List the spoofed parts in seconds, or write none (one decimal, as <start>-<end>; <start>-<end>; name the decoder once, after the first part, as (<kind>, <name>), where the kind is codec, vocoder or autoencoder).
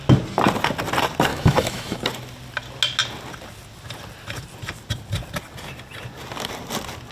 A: 1.3-2.0 (autoencoder, DAC-VAE)